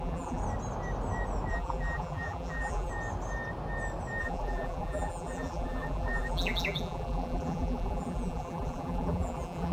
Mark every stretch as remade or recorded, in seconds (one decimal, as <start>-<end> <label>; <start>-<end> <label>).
0.0-0.4 remade; 0.4-1.5 recorded; 1.5-2.9 remade; 2.9-4.2 recorded; 4.2-9.7 remade